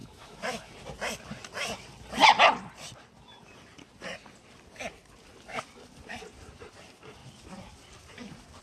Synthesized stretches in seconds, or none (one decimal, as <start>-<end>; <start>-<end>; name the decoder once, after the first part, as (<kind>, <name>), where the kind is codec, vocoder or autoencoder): 0.0-0.7 (autoencoder, DAC-VAE)